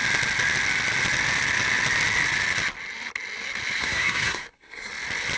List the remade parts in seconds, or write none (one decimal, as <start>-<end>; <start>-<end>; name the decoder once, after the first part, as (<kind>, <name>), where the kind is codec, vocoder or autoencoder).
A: 3.8-4.9 (codec, SNAC)